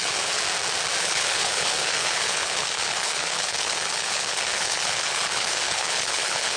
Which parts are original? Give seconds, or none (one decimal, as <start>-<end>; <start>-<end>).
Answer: 0.4-1.0